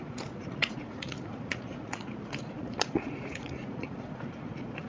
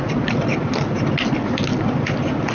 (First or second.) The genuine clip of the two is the second